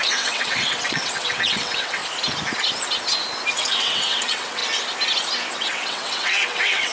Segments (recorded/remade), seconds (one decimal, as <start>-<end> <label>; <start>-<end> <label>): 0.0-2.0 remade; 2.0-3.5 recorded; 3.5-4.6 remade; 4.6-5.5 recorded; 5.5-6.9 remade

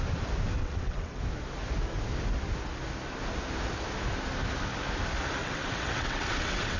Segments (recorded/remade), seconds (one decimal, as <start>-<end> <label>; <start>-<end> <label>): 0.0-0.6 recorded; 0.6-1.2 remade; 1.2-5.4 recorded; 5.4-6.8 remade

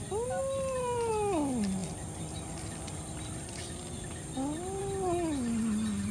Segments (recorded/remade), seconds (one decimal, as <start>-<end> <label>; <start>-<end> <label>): 0.0-6.1 recorded